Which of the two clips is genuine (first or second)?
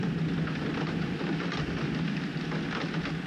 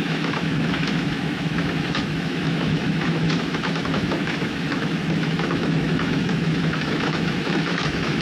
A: first